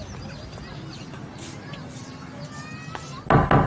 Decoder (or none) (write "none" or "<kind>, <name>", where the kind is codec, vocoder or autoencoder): none